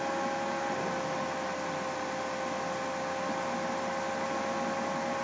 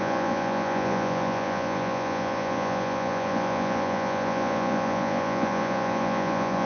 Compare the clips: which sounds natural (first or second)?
first